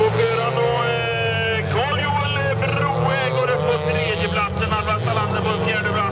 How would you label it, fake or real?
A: real